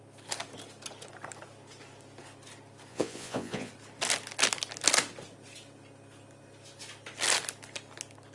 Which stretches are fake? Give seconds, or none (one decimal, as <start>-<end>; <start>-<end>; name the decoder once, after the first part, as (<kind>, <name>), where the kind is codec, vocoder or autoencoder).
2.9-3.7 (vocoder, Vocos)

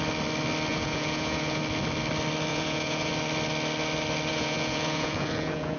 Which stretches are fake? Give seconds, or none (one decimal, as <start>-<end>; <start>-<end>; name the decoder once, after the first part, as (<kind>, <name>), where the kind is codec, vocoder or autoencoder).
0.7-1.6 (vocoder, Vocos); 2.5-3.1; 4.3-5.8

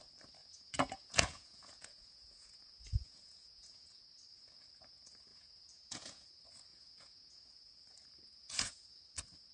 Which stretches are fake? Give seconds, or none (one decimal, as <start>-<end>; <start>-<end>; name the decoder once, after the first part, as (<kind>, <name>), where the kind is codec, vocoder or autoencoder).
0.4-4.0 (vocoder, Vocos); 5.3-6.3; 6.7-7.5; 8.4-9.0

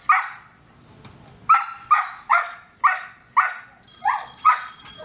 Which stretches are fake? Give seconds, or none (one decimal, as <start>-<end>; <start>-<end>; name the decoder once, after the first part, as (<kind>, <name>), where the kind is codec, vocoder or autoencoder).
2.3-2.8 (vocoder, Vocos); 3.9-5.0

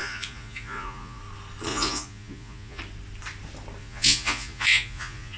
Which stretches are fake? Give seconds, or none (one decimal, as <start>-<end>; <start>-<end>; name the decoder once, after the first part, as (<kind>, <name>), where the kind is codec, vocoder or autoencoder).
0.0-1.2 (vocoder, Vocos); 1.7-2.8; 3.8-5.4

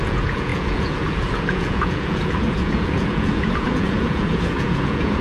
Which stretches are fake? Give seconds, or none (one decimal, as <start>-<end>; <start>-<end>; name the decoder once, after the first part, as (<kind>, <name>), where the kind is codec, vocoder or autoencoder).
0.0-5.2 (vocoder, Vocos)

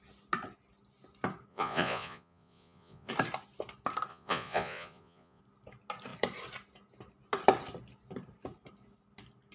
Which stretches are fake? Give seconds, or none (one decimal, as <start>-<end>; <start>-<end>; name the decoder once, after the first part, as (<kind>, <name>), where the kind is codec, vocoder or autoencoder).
1.5-3.1 (vocoder, Vocos); 4.1-5.4

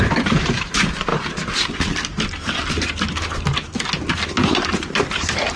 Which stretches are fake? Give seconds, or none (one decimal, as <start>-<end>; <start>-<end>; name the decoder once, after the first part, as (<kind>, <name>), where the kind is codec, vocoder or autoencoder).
none